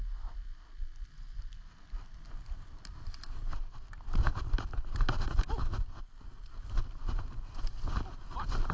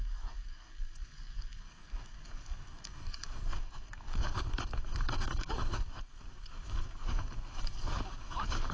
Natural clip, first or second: first